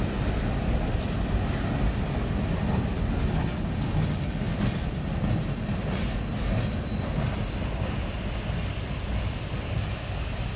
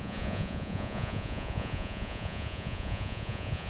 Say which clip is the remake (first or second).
second